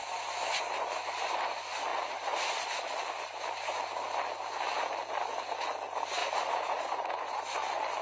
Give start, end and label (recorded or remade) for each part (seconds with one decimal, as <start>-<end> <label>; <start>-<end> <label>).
0.0-6.2 recorded; 6.2-7.4 remade; 7.4-8.0 recorded